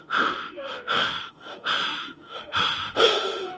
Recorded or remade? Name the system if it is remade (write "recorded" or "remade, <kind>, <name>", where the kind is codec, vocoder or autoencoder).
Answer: remade, autoencoder, DAC-VAE